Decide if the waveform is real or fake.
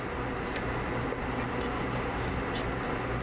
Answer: real